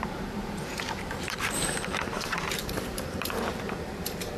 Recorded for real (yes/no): no